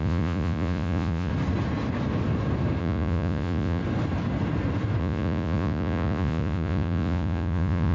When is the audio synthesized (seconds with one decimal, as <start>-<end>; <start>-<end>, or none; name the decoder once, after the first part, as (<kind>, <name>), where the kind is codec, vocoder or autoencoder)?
0.0-1.3 (vocoder, Vocos); 2.8-3.8; 5.0-7.9